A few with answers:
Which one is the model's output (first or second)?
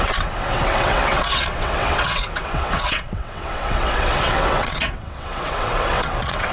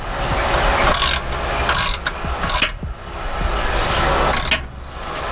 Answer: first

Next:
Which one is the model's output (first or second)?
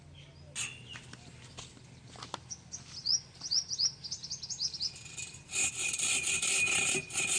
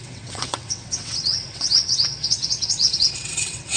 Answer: second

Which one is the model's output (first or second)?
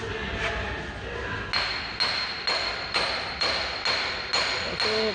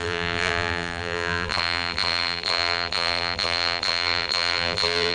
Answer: second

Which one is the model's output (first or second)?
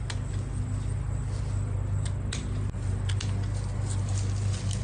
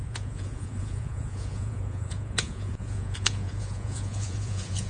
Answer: second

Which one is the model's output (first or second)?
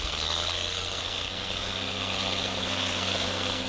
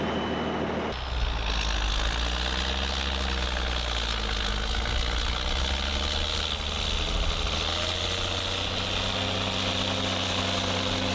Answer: first